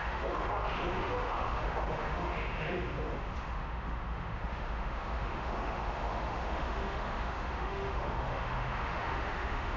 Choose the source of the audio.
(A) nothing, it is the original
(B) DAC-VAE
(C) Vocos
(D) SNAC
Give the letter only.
B